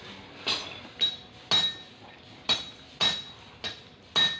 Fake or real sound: real